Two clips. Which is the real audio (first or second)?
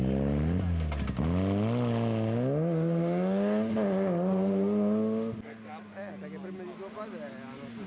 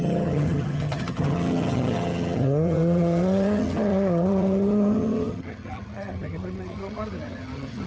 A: first